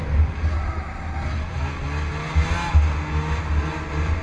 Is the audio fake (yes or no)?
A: no